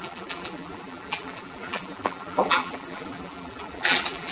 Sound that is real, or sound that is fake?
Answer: fake